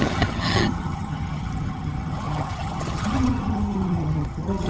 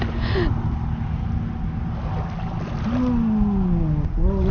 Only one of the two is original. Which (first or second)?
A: second